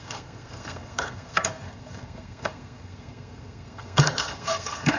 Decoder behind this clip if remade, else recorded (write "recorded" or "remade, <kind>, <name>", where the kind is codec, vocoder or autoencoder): remade, codec, SNAC